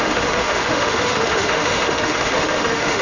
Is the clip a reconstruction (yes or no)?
yes